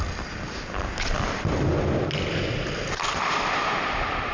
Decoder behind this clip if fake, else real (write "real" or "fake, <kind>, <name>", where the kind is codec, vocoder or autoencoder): fake, vocoder, BigVGAN v2